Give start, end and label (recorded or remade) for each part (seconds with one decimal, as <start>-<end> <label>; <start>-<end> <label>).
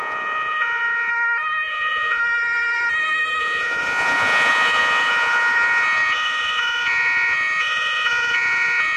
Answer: 0.0-1.1 remade; 1.1-1.7 recorded; 1.7-2.2 remade; 2.2-3.4 recorded; 3.4-9.0 remade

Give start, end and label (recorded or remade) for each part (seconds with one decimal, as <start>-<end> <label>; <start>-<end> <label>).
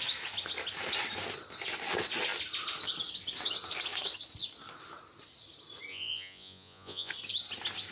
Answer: 0.0-5.9 recorded; 5.9-7.1 remade; 7.1-7.9 recorded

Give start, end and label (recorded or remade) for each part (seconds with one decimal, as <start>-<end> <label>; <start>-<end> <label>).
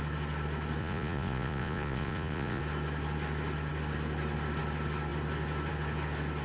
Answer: 0.0-0.8 recorded; 0.8-2.6 remade; 2.6-6.4 recorded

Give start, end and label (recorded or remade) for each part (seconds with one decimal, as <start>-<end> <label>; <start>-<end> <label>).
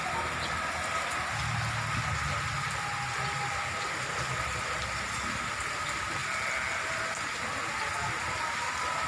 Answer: 0.0-9.1 recorded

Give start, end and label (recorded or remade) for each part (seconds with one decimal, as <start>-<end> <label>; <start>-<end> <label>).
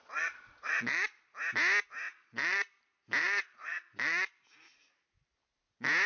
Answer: 0.0-1.2 remade; 1.2-2.1 recorded; 2.1-2.6 remade; 2.6-3.2 recorded; 3.2-4.3 remade; 4.3-6.1 recorded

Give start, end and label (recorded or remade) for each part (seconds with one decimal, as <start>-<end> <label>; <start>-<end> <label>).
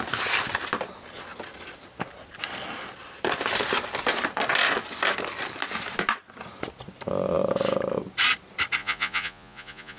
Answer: 0.0-8.8 recorded; 8.8-10.0 remade